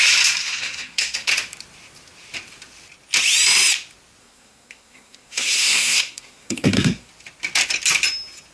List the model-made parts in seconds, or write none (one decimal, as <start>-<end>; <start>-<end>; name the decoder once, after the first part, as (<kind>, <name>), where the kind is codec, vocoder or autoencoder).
0.4-1.3 (codec, SNAC); 4.2-7.1